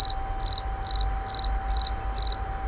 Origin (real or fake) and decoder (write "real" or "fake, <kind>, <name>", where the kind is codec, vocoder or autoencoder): real